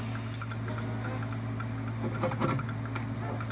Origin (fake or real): real